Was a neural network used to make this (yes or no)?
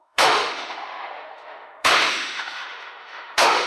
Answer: yes